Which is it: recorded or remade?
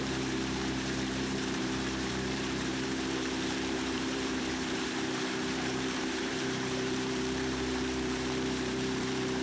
remade